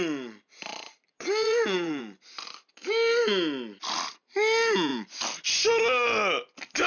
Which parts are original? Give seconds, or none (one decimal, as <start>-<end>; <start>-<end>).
0.0-0.7; 2.0-6.9